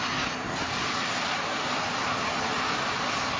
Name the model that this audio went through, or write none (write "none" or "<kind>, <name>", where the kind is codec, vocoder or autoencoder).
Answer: none